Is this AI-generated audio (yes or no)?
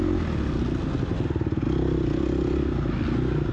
no